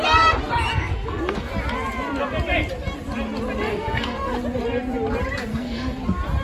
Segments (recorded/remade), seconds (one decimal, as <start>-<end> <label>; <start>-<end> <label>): 0.0-0.7 recorded; 0.7-1.5 remade; 1.5-3.7 recorded; 3.7-4.3 remade; 4.3-5.5 recorded; 5.5-6.0 remade; 6.0-6.4 recorded

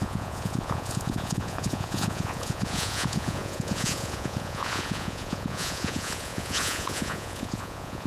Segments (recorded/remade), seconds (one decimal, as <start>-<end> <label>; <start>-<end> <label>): 0.0-8.1 remade

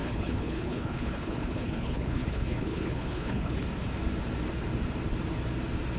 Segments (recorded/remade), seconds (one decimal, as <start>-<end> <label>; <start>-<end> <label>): 0.0-3.6 remade; 3.6-6.0 recorded

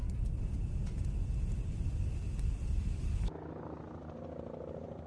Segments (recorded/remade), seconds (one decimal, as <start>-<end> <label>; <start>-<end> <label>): 0.0-5.1 recorded